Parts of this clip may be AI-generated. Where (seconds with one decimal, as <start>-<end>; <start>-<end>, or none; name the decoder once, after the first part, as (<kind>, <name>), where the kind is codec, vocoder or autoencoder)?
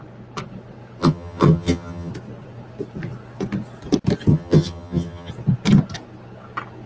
1.0-2.1 (vocoder, HiFi-GAN); 4.3-5.3